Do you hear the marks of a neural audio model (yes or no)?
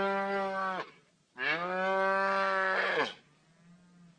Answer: no